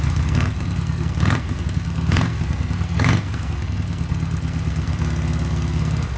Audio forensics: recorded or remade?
remade